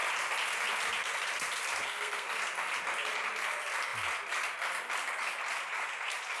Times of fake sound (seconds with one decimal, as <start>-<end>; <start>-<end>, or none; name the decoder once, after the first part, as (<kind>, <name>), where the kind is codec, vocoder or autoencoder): 1.8-2.3 (codec, SNAC)